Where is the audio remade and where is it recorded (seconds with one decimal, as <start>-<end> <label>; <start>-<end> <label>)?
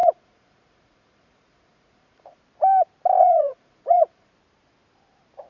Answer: 0.0-2.4 remade; 2.4-3.2 recorded; 3.2-4.3 remade; 4.3-5.5 recorded